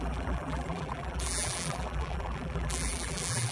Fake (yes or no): yes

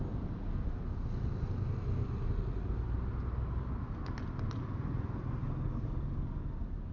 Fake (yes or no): no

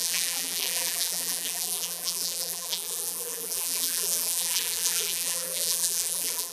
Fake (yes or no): yes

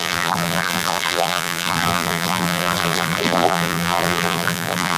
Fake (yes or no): yes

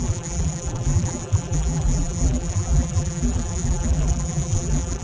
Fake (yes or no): yes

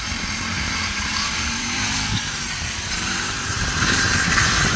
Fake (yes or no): yes